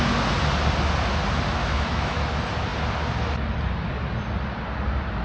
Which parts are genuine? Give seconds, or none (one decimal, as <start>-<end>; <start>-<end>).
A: 0.0-1.6; 2.3-5.2